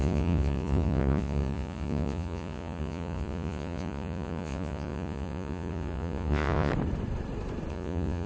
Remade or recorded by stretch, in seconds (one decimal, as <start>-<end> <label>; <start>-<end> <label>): 0.0-6.7 remade; 6.7-7.7 recorded; 7.7-8.3 remade